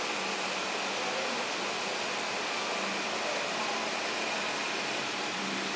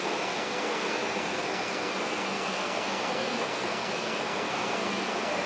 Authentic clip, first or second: first